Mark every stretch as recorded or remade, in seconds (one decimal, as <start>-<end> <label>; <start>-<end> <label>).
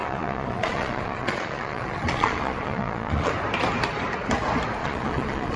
0.0-3.3 remade; 3.3-4.8 recorded; 4.8-5.6 remade